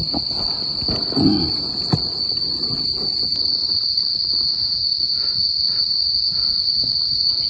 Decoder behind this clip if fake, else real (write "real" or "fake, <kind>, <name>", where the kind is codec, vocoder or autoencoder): real